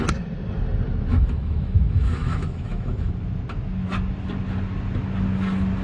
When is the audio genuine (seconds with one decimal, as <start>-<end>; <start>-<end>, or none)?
0.0-1.1; 3.1-5.8